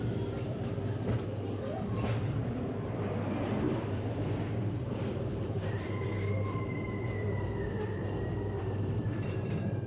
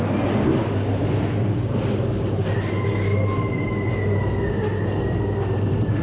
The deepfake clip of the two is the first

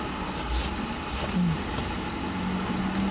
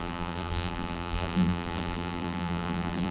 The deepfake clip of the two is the second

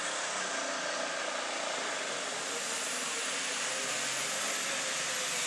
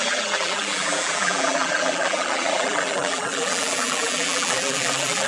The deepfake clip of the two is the second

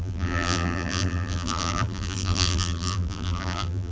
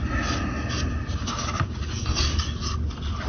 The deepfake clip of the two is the first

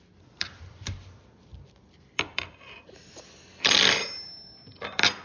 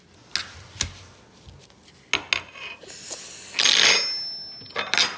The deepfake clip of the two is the first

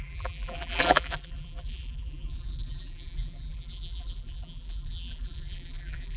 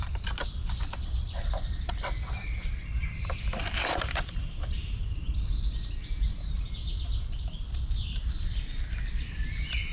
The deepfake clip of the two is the first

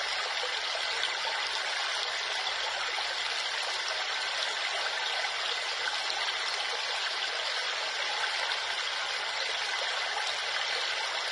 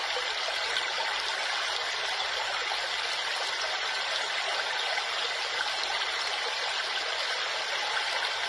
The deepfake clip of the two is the second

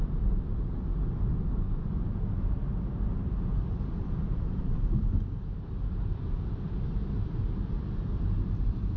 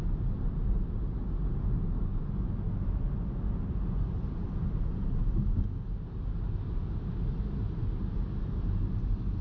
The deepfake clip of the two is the first